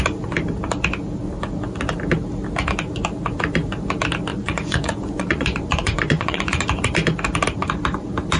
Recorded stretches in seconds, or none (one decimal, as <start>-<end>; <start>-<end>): 0.0-4.3; 6.6-8.4